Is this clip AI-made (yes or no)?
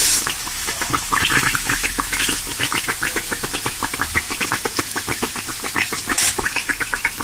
yes